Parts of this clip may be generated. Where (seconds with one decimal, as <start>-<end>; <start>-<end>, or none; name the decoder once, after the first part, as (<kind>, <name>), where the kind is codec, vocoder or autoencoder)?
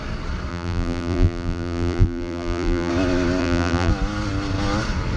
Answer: 0.5-2.9 (vocoder, BigVGAN v2); 3.4-3.9